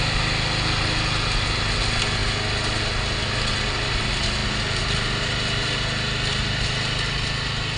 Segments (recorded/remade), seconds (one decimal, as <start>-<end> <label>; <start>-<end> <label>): 0.0-7.8 recorded